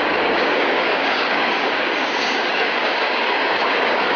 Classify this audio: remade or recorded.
remade